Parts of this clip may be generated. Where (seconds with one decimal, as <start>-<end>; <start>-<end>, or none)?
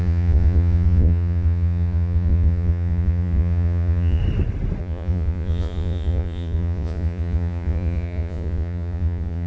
0.0-4.2; 4.8-9.5